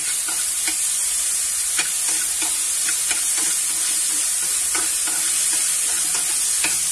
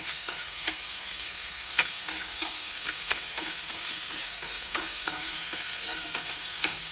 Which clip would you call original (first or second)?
first